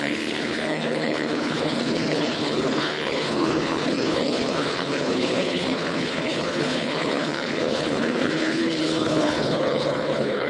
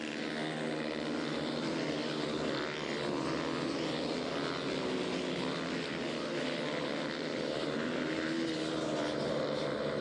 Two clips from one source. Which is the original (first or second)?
second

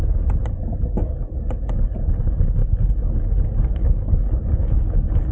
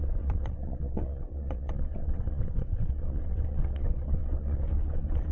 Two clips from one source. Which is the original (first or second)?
first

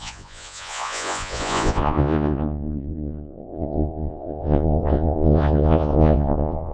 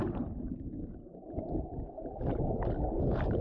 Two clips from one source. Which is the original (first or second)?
second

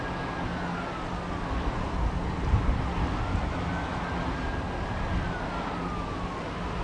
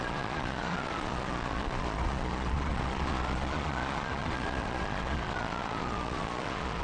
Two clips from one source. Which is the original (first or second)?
first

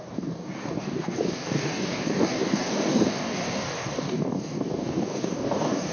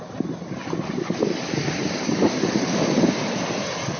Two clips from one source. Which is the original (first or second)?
second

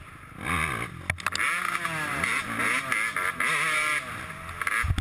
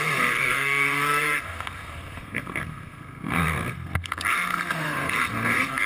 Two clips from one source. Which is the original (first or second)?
first